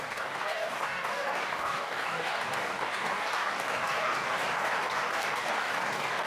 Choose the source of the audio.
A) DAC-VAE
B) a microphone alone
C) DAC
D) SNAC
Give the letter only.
C